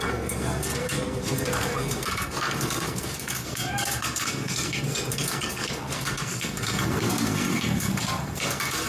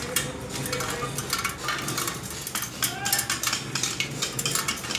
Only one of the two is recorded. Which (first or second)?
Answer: second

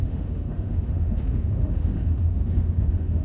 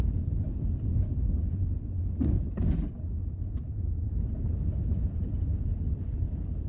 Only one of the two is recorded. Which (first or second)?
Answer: second